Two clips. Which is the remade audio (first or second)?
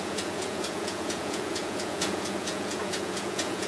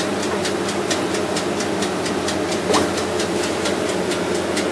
first